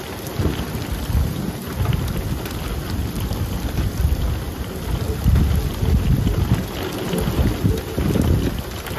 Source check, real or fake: real